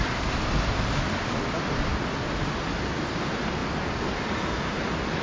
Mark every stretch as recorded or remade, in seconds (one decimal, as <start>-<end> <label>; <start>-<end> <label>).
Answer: 0.0-5.2 recorded

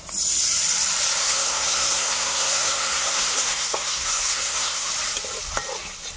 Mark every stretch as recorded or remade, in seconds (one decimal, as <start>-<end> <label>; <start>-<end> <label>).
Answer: 0.0-1.2 recorded; 1.2-4.9 remade; 4.9-6.2 recorded

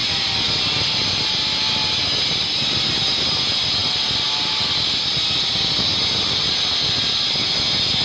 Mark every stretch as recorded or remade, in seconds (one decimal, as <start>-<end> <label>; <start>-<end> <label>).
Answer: 0.0-8.0 recorded

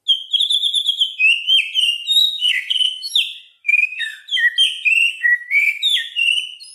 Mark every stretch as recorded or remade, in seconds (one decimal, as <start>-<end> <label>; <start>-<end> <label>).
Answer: 0.0-2.2 recorded; 2.2-3.1 remade; 3.1-3.6 recorded; 3.6-4.2 remade; 4.2-5.1 recorded; 5.1-5.8 remade; 5.8-6.7 recorded

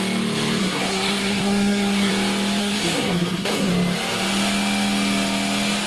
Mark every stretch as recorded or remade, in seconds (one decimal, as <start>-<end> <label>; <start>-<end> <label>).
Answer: 0.0-0.6 recorded; 0.6-2.1 remade; 2.1-2.6 recorded; 2.6-3.7 remade; 3.7-5.9 recorded

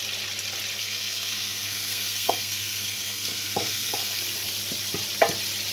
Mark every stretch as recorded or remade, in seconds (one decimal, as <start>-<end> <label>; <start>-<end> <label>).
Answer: 0.0-0.8 recorded; 0.8-4.2 remade; 4.2-5.7 recorded

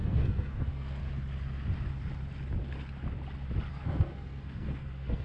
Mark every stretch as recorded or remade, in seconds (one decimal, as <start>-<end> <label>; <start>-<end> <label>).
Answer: 0.0-1.0 remade; 1.0-3.7 recorded; 3.7-5.2 remade